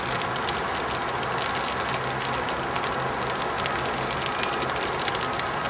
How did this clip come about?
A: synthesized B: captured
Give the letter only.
B